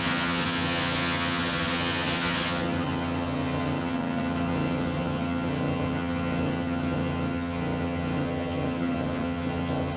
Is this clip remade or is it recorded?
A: remade